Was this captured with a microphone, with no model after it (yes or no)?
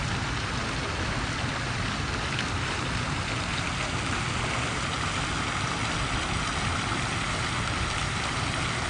yes